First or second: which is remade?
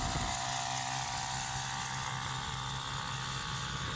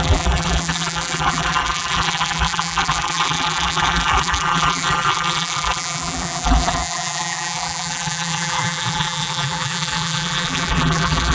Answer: second